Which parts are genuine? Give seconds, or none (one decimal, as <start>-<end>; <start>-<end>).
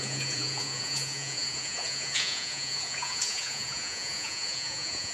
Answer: none